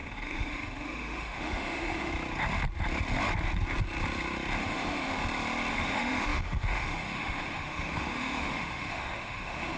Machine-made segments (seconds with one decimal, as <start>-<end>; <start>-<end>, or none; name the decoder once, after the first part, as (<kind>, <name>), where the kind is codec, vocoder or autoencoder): 0.0-2.1 (autoencoder, DAC-VAE); 4.6-5.2; 5.7-9.8